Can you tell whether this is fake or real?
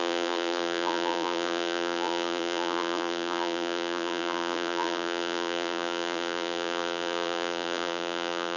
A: fake